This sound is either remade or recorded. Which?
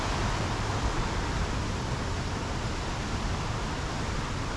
recorded